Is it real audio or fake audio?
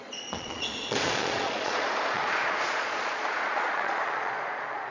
fake